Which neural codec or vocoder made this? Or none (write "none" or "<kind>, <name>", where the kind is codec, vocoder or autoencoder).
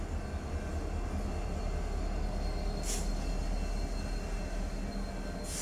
none